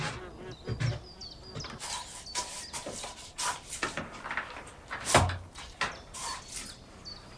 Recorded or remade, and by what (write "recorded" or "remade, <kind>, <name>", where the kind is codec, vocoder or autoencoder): recorded